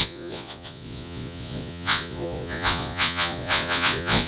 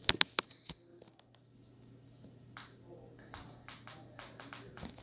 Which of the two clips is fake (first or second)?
first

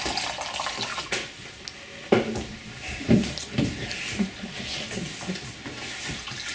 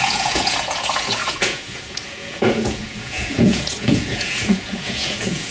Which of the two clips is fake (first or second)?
second